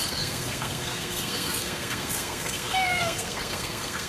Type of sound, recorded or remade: remade